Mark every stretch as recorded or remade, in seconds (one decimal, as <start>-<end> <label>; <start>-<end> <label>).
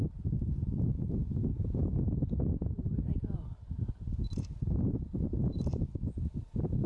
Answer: 0.0-6.9 recorded